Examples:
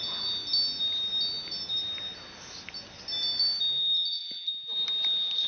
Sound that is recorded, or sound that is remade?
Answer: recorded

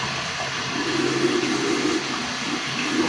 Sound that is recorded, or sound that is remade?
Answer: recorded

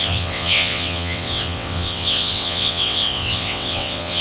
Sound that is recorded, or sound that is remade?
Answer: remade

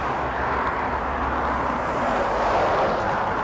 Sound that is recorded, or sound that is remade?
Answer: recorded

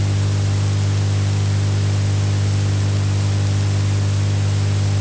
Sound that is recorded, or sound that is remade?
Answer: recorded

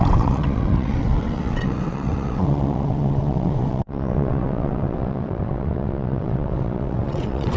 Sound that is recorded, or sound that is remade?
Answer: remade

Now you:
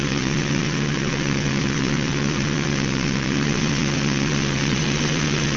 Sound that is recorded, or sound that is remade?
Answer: remade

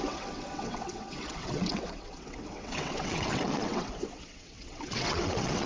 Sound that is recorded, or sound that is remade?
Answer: remade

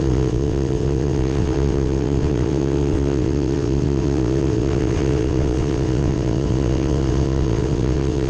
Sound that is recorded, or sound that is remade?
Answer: remade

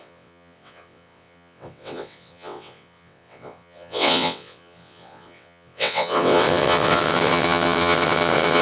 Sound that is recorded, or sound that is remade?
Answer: remade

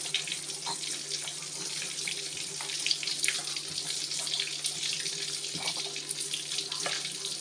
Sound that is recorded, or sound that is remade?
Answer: recorded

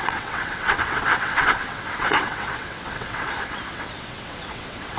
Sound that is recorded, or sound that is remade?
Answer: remade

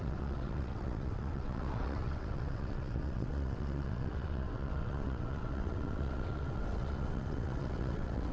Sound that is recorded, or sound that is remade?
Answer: remade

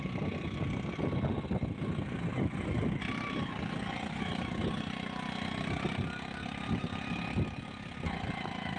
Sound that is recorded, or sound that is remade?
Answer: recorded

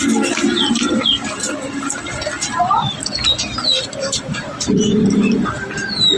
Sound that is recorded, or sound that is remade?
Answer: recorded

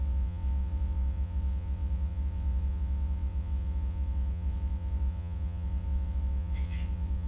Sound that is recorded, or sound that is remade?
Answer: remade